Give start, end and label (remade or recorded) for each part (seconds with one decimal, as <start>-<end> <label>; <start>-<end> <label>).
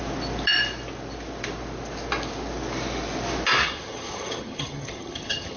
0.0-3.6 recorded; 3.6-5.6 remade